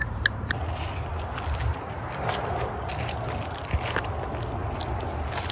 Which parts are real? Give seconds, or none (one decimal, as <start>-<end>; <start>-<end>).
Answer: 0.6-5.5